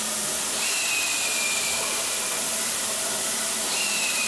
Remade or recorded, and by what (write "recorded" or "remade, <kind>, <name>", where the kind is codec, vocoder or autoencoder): remade, vocoder, BigVGAN v2